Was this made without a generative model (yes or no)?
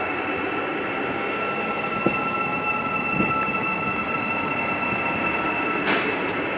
yes